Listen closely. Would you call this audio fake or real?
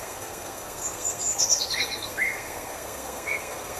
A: fake